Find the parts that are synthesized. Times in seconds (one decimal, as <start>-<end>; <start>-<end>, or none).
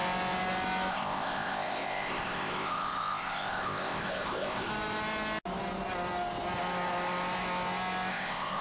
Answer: 0.9-4.7; 8.1-8.6